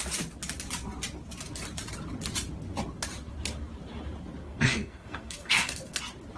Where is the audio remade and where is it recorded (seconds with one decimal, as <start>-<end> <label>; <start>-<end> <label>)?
0.0-4.4 recorded; 4.4-6.0 remade; 6.0-6.4 recorded